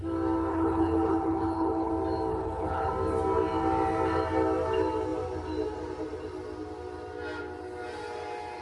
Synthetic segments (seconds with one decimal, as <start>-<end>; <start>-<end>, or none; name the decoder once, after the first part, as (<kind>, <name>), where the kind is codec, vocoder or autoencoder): 0.5-1.9 (codec, HILCodec); 2.3-2.9